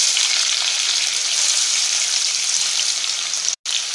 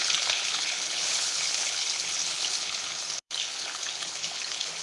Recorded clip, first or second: first